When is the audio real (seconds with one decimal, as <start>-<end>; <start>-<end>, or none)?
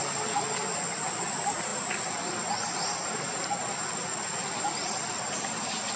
0.0-6.0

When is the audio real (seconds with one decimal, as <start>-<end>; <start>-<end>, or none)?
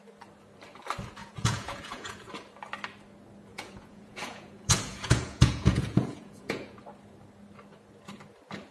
0.0-1.2; 2.3-3.5; 6.8-8.7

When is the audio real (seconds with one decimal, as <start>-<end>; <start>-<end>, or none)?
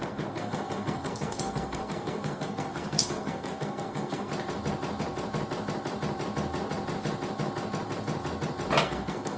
4.3-8.8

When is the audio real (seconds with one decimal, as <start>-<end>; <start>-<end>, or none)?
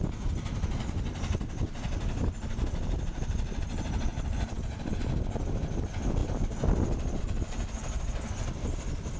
0.0-4.1; 4.9-9.2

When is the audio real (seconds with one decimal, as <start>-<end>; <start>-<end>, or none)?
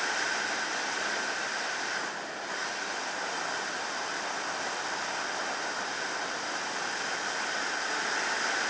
0.0-8.7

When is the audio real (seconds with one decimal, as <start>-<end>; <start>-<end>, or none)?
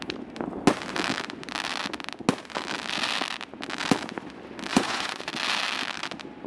0.0-4.7; 5.3-6.5